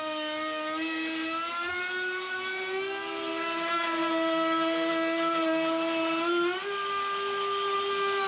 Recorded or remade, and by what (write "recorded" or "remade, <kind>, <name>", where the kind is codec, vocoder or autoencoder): recorded